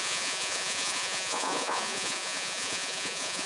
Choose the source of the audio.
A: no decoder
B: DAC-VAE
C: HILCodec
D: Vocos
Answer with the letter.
D